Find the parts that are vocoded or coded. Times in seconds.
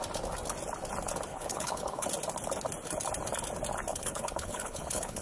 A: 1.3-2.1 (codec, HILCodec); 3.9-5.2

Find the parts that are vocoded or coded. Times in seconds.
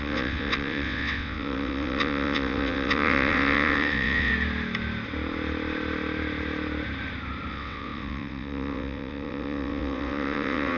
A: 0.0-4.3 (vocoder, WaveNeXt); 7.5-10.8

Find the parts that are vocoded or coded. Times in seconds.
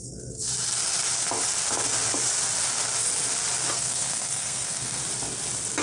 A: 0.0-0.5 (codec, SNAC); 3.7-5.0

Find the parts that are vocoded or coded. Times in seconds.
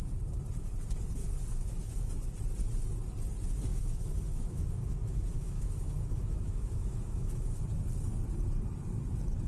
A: 1.2-2.1 (autoencoder, DAC-VAE); 3.7-7.6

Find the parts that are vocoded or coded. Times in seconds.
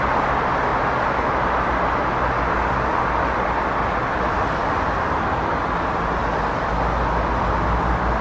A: none